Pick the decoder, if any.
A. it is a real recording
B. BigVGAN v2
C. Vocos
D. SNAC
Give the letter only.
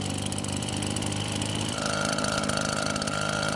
B